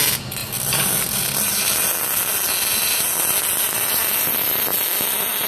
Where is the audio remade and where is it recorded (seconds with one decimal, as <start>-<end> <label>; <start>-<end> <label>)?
0.0-5.5 recorded